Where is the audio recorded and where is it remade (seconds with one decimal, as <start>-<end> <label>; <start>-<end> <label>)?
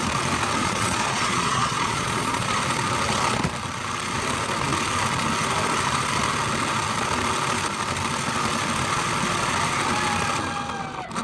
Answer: 0.0-0.6 recorded; 0.6-2.6 remade; 2.6-11.2 recorded